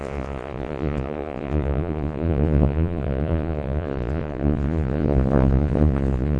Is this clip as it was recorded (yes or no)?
no